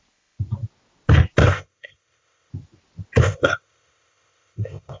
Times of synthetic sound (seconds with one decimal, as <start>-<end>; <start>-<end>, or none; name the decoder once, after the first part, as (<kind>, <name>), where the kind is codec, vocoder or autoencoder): 1.4-2.5 (codec, ZipCodec); 3.2-5.0